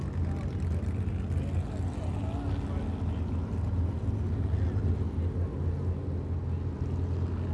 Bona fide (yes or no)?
yes